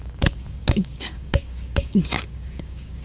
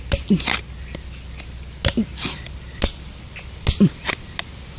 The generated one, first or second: first